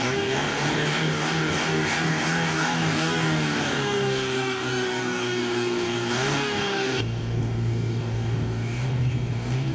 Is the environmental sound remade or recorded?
remade